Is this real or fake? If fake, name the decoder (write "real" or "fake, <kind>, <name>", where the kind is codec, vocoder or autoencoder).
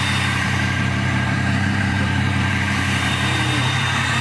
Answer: fake, vocoder, BigVGAN v2